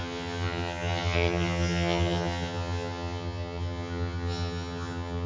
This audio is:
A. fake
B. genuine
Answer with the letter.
A